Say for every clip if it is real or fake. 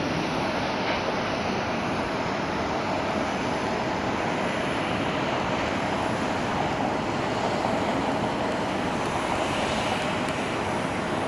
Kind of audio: real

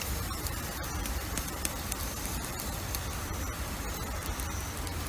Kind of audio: fake